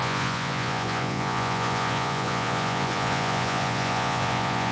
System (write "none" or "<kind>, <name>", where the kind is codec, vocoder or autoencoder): vocoder, Vocos